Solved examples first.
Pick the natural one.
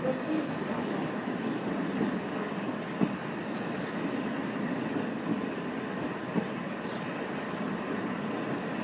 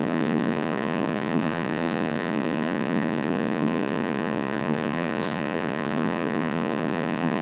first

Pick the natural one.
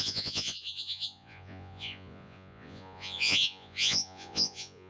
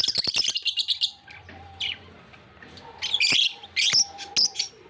second